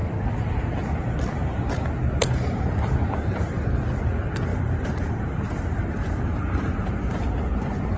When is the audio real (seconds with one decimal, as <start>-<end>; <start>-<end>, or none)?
0.0-4.5; 7.2-8.0